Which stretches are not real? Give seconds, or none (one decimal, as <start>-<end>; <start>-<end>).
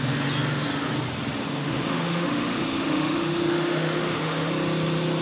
1.4-4.5